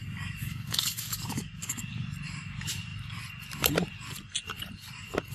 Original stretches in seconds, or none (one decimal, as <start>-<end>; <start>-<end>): 1.9-5.3